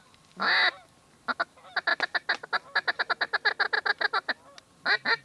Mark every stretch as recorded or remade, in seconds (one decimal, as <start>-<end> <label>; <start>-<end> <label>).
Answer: 0.0-5.2 recorded

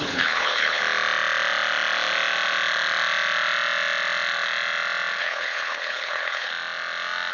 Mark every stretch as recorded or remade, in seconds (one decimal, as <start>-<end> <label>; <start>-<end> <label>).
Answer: 0.0-0.8 remade; 0.8-5.2 recorded; 5.2-6.5 remade; 6.5-7.3 recorded

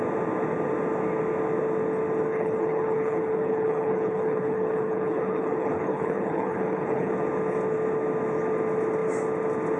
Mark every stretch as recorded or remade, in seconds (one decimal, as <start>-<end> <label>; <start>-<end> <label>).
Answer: 0.0-2.3 recorded; 2.3-7.1 remade; 7.1-9.8 recorded